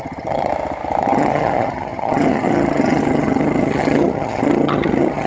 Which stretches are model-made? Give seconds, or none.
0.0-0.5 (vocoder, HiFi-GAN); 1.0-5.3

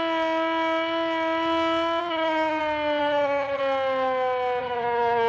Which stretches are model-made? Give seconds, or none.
2.0-2.6 (vocoder, HiFi-GAN); 3.0-3.6; 4.6-5.3

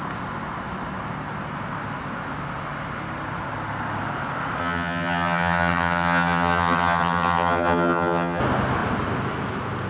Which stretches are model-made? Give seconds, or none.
4.6-8.4 (vocoder, HiFi-GAN)

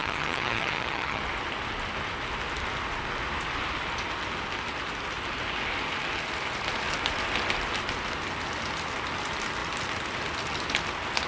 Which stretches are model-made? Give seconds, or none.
0.0-1.2 (vocoder, HiFi-GAN)